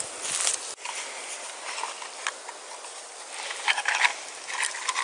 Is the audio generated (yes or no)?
no